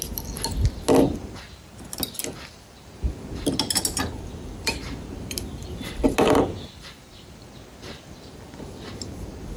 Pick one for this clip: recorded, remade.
recorded